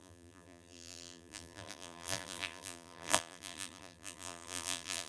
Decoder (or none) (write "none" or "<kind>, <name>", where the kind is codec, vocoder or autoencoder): vocoder, BigVGAN v2